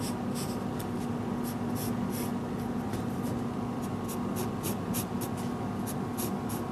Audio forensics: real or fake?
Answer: real